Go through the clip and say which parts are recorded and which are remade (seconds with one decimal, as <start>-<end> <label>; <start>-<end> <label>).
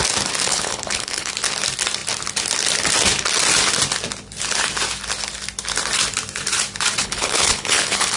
0.0-0.5 recorded; 0.5-1.3 remade; 1.3-7.0 recorded; 7.0-8.2 remade